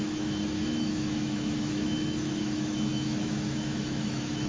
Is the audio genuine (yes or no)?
no